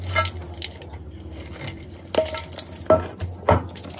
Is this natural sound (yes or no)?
yes